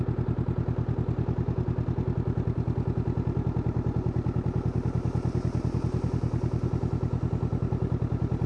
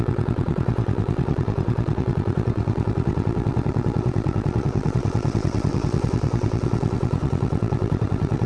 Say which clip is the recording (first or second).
first